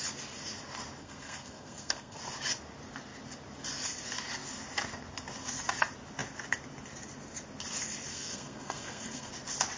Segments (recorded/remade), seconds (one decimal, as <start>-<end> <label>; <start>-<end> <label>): 0.0-1.0 recorded; 1.0-2.2 remade; 2.2-8.1 recorded; 8.1-9.3 remade; 9.3-9.8 recorded

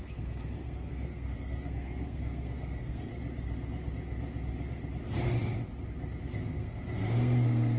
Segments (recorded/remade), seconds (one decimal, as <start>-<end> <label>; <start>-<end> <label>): 0.0-3.1 remade; 3.1-6.2 recorded; 6.2-7.8 remade

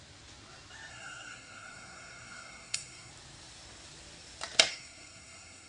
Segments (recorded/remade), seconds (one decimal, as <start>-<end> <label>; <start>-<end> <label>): 0.0-0.9 recorded; 0.9-3.1 remade; 3.1-4.7 recorded; 4.7-5.7 remade

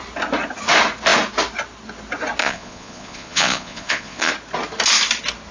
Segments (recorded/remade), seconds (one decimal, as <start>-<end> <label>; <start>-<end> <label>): 0.0-2.4 recorded; 2.4-4.3 remade; 4.3-5.5 recorded